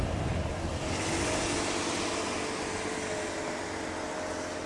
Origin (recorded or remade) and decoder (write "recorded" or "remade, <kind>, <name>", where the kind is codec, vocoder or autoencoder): recorded